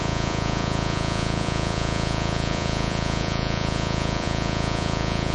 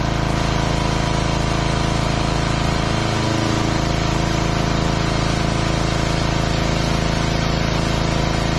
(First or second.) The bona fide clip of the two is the second